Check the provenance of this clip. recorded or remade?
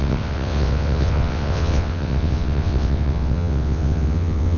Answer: remade